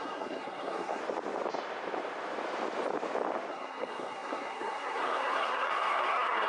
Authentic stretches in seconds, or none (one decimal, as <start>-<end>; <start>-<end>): 1.0-3.5